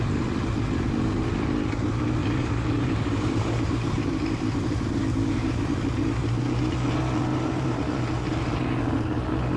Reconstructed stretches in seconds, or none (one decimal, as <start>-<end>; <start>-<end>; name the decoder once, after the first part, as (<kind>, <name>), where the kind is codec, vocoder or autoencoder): 2.2-5.7 (vocoder, BigVGAN v2); 7.3-8.0